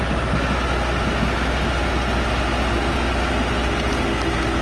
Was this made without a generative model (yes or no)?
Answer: yes